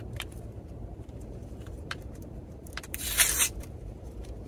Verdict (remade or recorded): remade